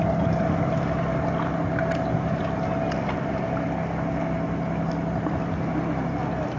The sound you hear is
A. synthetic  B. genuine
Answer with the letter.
B